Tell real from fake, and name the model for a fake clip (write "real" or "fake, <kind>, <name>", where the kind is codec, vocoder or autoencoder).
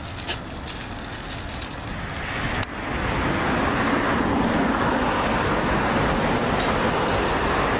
real